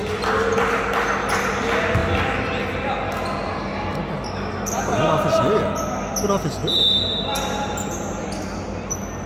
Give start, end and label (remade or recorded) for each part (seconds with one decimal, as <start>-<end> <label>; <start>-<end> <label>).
0.0-9.3 recorded